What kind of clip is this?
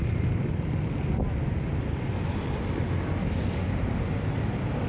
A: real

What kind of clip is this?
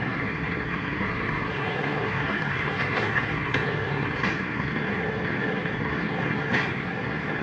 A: fake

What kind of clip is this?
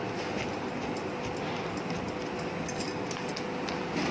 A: real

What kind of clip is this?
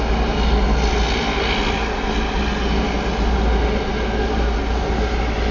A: real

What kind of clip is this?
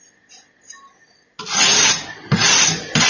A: real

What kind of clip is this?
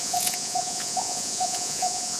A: fake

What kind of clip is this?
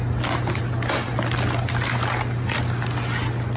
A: real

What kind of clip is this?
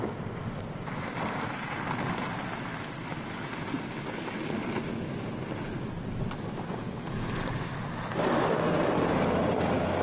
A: real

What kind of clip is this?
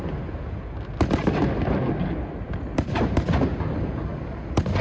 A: real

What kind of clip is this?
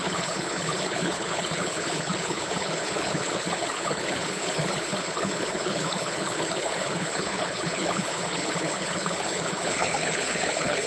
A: fake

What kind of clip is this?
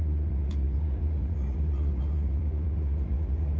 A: fake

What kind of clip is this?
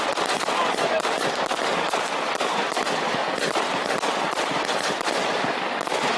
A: real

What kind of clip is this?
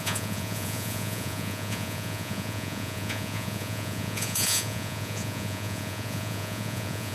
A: fake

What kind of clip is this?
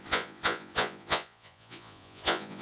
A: fake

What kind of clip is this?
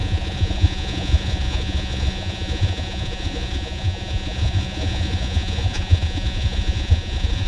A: fake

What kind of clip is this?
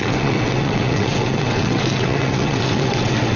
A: fake